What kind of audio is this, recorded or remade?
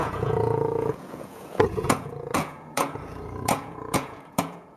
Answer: remade